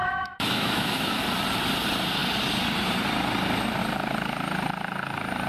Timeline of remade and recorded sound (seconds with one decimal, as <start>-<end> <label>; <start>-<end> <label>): 0.0-1.2 remade; 1.2-5.5 recorded